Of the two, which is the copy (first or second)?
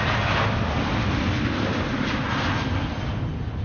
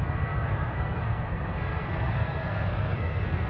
second